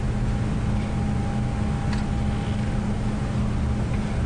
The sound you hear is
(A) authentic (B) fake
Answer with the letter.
A